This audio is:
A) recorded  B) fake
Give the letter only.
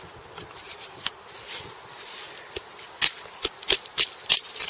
A